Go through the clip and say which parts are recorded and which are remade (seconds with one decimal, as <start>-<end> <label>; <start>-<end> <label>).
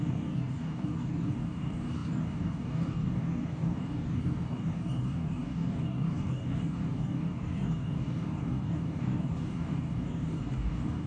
0.0-11.1 remade